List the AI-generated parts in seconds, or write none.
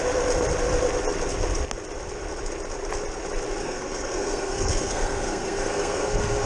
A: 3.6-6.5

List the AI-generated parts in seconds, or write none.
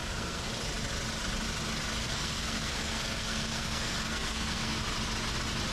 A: 0.0-0.5; 2.0-4.8